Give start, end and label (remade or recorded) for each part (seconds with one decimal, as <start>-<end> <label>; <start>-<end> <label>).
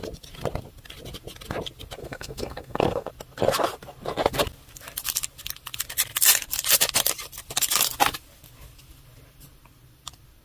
0.0-2.0 recorded; 2.0-3.1 remade; 3.1-10.4 recorded